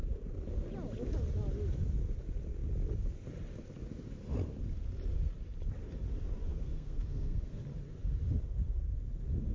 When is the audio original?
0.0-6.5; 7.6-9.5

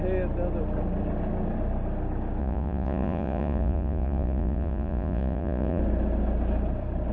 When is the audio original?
0.0-2.4; 5.8-7.1

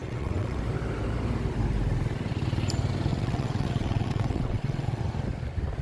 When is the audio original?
0.6-3.1; 5.0-5.8

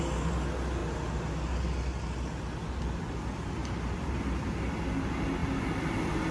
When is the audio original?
0.0-3.6; 4.2-6.3

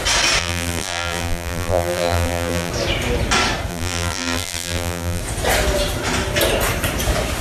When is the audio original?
0.0-0.4; 2.7-3.7; 5.2-7.4